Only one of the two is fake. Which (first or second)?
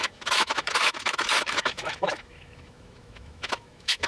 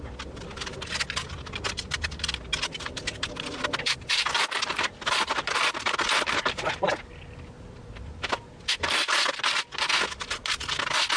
first